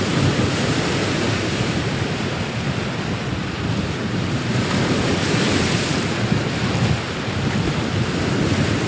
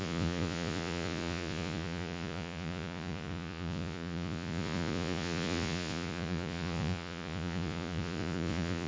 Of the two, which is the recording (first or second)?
first